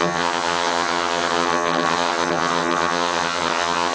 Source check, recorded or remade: remade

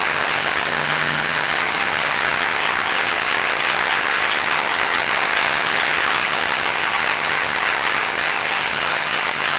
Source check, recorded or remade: remade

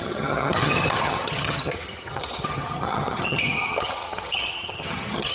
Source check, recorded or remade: remade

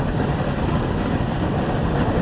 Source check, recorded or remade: recorded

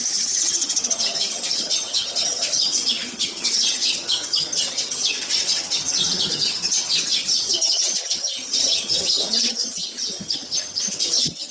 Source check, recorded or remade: remade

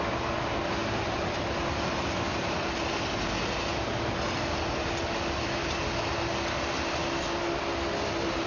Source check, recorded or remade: recorded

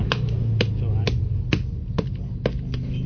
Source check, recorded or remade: recorded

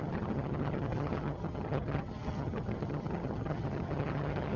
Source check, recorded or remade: remade